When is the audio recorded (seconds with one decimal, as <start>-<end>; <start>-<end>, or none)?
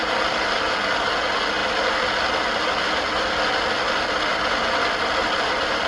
0.0-5.9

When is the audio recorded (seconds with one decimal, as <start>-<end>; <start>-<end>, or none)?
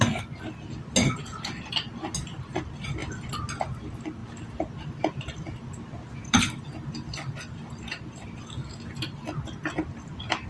0.0-4.2; 8.4-10.5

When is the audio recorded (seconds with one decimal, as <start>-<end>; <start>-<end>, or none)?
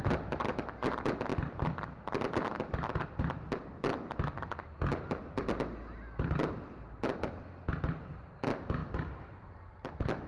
0.0-8.8; 9.9-10.3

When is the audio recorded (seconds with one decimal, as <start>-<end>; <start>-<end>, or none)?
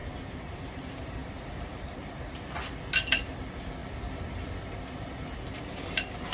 0.7-1.2; 1.8-3.8; 4.5-6.3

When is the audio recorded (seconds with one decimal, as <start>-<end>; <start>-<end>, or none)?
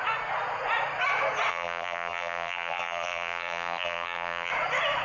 0.0-1.5; 4.5-5.0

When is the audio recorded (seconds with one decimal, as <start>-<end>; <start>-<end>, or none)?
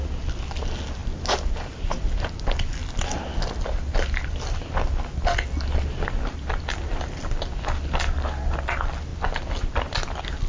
0.0-10.5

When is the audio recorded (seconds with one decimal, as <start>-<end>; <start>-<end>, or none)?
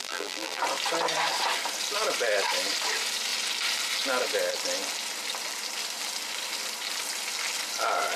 0.6-8.2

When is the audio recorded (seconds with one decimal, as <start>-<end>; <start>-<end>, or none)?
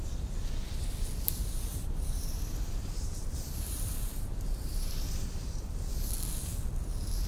0.0-1.7; 6.1-7.3